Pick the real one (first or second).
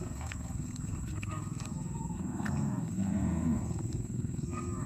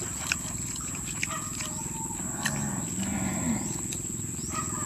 second